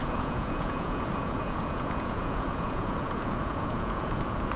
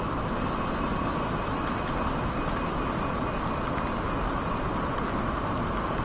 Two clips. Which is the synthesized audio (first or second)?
first